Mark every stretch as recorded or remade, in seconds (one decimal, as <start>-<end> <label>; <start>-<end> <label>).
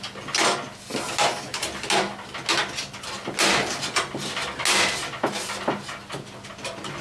0.0-7.0 recorded